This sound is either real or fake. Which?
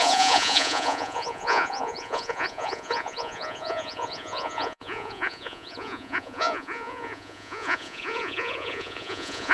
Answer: fake